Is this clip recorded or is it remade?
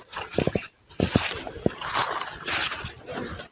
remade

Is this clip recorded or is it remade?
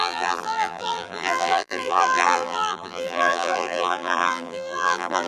remade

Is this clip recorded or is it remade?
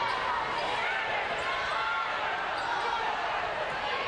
remade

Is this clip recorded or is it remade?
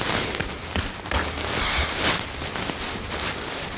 recorded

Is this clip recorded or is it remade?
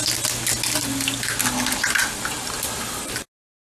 recorded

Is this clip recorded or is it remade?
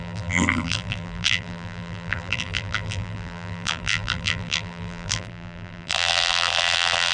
remade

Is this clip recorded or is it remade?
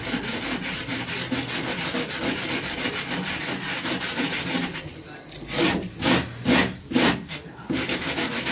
recorded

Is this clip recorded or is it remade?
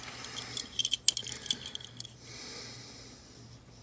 recorded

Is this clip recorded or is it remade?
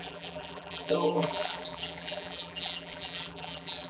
remade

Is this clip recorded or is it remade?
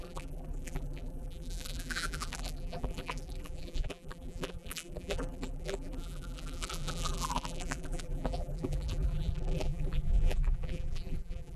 remade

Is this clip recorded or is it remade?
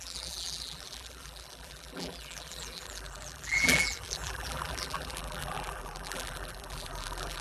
remade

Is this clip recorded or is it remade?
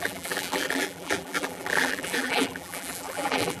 remade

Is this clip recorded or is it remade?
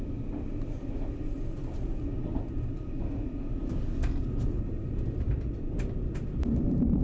recorded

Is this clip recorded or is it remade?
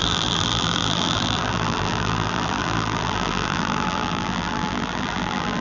remade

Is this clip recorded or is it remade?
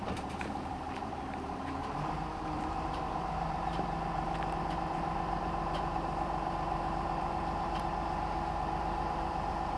remade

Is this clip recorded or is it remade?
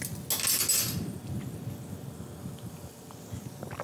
recorded